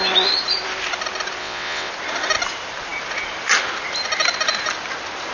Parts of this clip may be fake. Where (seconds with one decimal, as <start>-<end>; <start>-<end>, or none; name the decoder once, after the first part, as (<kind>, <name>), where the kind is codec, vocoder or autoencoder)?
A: 1.4-1.9 (vocoder, WaveNeXt)